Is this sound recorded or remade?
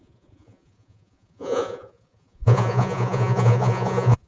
remade